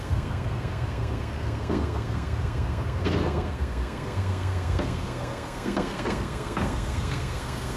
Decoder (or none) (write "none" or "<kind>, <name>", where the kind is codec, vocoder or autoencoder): codec, SNAC